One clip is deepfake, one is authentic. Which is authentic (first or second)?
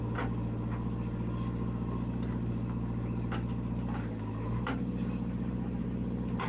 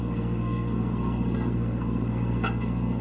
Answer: first